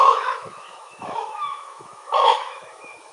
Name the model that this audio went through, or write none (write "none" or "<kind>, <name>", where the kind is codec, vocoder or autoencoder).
autoencoder, DAC-VAE